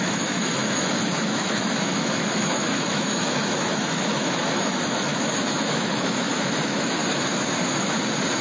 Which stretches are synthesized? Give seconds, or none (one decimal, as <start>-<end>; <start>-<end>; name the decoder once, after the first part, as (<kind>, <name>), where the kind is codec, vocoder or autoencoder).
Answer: 0.0-7.0 (autoencoder, DAC-VAE)